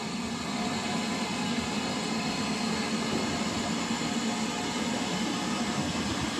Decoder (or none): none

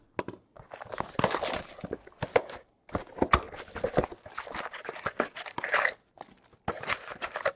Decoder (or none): none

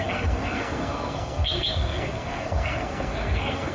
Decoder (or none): codec, SNAC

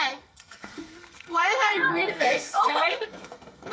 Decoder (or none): codec, SNAC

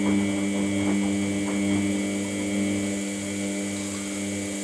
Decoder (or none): none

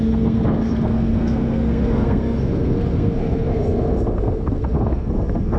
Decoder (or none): codec, SNAC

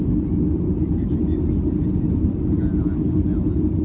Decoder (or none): none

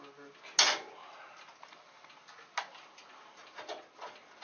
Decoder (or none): none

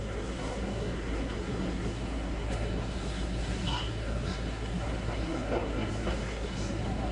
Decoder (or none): codec, SNAC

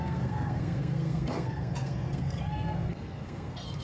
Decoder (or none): codec, SNAC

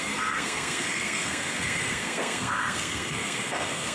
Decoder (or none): codec, SNAC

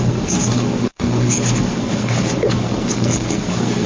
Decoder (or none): codec, SNAC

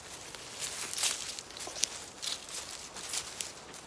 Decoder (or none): none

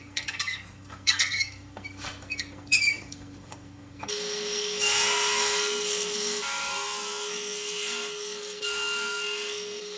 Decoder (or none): codec, SNAC